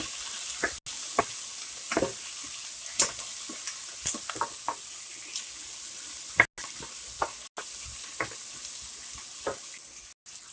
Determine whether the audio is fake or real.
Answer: real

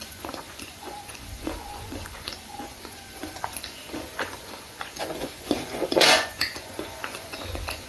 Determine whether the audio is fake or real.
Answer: fake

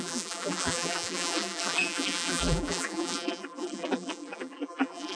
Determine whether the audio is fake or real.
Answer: fake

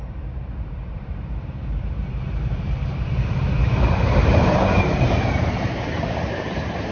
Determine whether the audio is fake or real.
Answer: fake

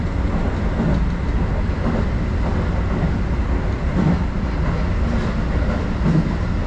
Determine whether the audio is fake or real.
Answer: real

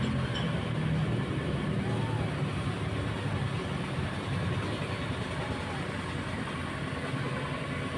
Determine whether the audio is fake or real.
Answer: real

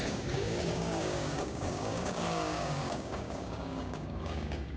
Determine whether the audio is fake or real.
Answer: fake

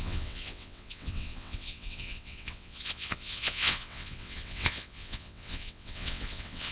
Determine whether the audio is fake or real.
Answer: fake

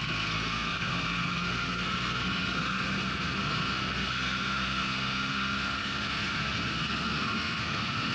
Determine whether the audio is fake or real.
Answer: fake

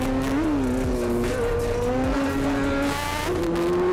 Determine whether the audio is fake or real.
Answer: real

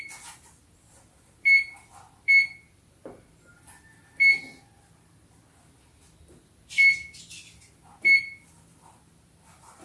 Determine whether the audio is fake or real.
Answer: real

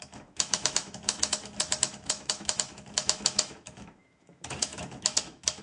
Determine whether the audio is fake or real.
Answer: fake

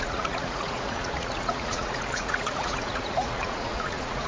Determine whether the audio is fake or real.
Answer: fake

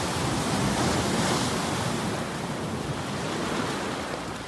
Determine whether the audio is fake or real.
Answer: real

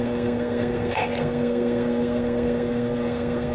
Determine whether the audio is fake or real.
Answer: fake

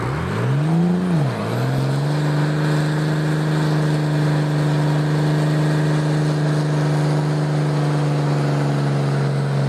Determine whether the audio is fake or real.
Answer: real